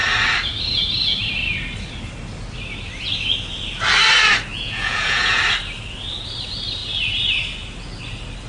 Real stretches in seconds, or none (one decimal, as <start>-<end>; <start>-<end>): 0.0-4.5; 5.4-8.5